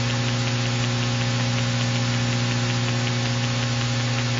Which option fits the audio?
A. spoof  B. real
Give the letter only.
B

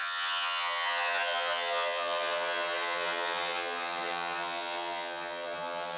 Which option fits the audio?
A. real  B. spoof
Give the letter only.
B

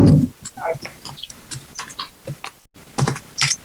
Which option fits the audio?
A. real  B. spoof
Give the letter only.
A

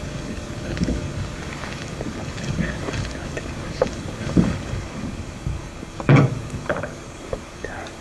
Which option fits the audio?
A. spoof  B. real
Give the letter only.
A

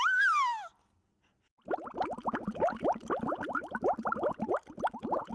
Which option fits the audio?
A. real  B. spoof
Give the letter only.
A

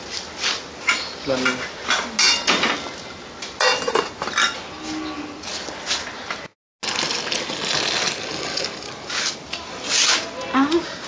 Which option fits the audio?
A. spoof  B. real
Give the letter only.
B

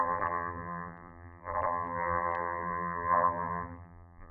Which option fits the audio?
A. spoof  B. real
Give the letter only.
A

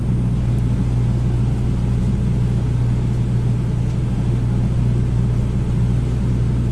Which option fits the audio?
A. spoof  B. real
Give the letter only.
B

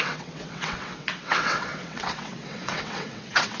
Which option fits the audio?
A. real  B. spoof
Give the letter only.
B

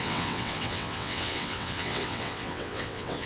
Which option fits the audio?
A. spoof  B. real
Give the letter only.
A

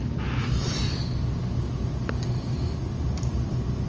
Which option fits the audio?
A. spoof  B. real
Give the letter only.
B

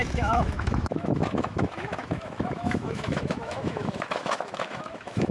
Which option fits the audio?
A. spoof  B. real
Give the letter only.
A